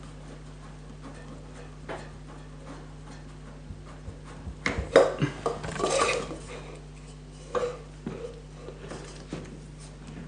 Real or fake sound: real